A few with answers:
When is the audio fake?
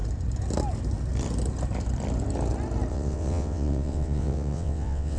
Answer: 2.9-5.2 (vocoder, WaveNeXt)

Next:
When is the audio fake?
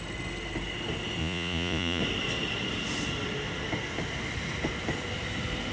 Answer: 1.2-2.0 (vocoder, Vocos)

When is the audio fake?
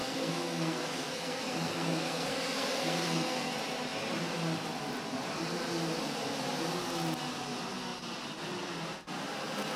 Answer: 0.0-3.5 (codec, SNAC)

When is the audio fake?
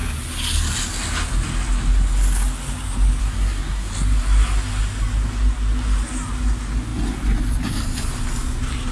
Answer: 3.2-3.9 (codec, SNAC)